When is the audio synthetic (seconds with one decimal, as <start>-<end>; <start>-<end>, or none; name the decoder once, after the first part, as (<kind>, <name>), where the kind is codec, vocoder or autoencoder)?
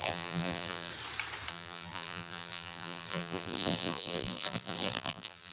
0.0-0.9 (vocoder, BigVGAN v2); 1.5-5.5